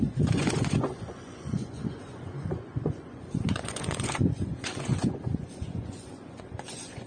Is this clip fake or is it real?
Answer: fake